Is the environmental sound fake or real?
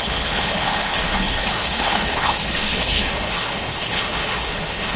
fake